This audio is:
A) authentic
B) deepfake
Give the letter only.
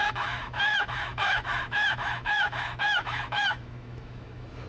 B